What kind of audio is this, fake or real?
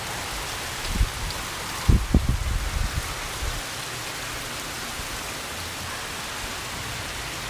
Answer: real